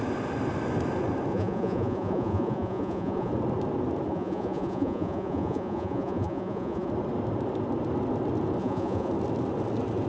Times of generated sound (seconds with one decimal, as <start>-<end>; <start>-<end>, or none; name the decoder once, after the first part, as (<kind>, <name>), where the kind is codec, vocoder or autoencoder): 1.3-3.3 (vocoder, Vocos); 4.1-6.9; 8.6-9.1